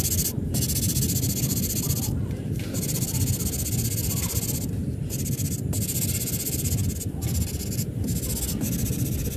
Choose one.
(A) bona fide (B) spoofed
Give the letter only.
A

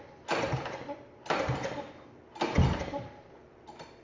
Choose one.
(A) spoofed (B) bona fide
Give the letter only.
B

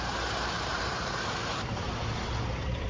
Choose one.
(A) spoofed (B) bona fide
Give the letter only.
A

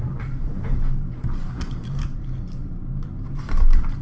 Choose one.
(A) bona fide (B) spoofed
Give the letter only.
B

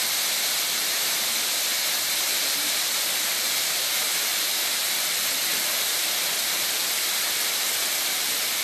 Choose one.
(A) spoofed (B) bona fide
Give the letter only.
A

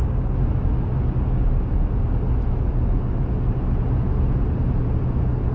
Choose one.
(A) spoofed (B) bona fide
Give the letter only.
B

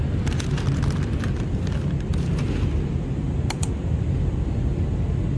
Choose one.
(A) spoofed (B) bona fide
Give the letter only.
B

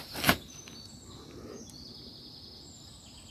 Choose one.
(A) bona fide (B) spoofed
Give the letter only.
A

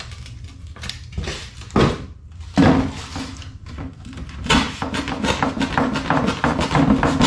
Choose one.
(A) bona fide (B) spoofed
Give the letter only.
A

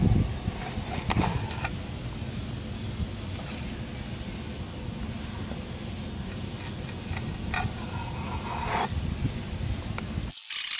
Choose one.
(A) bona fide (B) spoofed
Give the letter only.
A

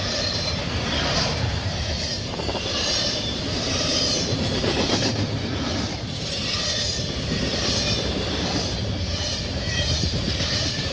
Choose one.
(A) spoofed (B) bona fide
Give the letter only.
A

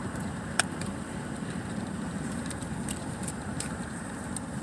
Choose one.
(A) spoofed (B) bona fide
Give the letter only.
A